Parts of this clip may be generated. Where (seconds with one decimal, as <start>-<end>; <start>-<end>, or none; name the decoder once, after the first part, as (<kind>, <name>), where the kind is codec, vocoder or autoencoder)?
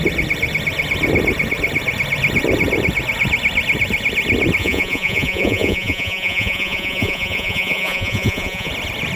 4.6-8.7 (vocoder, Vocos)